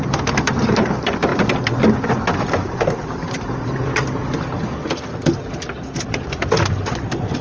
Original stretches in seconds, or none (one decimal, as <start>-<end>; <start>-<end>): 0.0-7.4